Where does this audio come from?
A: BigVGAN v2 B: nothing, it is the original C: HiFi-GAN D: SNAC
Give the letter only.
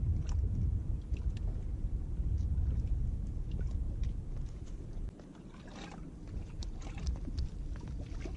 B